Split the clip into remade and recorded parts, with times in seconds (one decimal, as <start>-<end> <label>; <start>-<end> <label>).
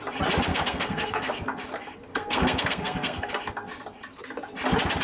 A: 0.0-0.5 recorded; 0.5-1.3 remade; 1.3-2.1 recorded; 2.1-3.3 remade; 3.3-5.0 recorded